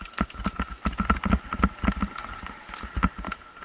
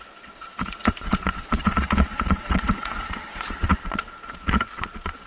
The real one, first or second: first